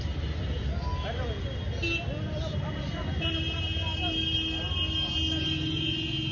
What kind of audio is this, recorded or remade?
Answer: recorded